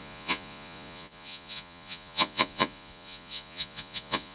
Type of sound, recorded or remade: remade